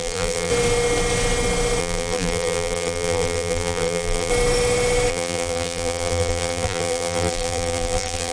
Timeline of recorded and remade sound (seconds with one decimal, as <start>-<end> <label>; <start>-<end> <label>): 0.0-0.5 remade; 0.5-1.8 recorded; 1.8-4.3 remade; 4.3-5.1 recorded; 5.1-8.3 remade